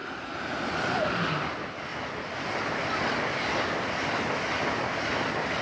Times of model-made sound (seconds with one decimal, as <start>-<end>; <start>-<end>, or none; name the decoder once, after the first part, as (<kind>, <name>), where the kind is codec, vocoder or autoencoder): 0.0-0.6 (vocoder, BigVGAN v2)